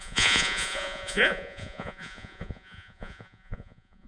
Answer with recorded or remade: remade